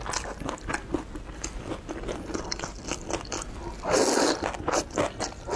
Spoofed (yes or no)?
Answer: no